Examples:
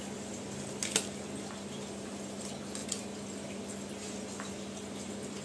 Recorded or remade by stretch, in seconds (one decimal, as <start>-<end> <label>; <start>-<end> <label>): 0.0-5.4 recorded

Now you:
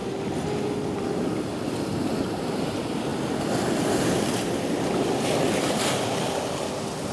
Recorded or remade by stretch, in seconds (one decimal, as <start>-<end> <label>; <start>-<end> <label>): 0.0-7.1 recorded

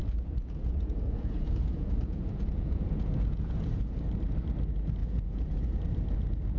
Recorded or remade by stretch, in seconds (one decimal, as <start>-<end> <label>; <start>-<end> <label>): 0.0-4.0 remade; 4.0-5.0 recorded; 5.0-5.7 remade; 5.7-6.6 recorded